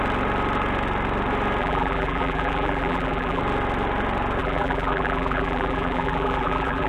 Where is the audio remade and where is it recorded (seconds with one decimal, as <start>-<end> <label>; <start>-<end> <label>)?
0.0-1.6 recorded; 1.6-3.4 remade; 3.4-4.4 recorded; 4.4-6.9 remade